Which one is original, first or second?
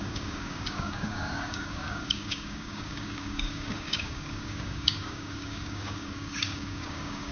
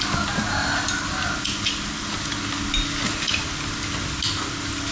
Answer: second